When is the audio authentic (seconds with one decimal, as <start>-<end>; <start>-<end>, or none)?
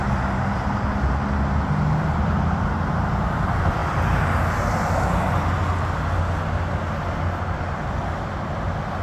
0.0-9.0